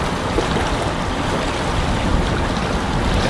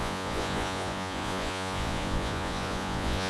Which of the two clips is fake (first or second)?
second